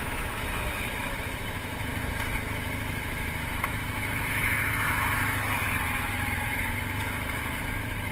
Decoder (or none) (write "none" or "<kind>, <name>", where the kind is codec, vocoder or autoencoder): autoencoder, DAC-VAE